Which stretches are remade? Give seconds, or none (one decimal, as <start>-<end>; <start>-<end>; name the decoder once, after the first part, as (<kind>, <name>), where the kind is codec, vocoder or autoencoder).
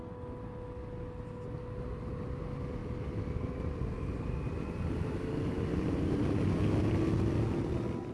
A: none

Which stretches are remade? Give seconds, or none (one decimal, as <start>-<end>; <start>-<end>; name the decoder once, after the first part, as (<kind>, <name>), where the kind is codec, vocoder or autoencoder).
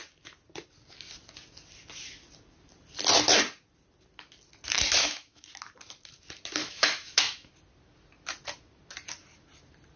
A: 5.0-5.5 (autoencoder, DAC-VAE); 6.6-7.5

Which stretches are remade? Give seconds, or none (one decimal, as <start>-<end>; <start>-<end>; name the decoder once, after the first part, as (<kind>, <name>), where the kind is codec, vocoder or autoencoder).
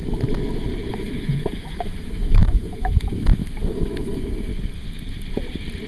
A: 0.9-4.5 (autoencoder, DAC-VAE)